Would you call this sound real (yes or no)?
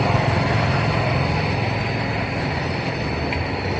yes